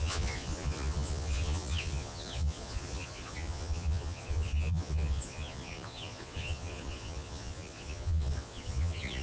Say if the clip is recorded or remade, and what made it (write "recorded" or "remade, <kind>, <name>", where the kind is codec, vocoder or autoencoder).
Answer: remade, vocoder, Vocos